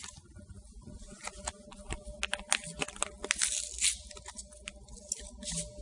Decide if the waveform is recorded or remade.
recorded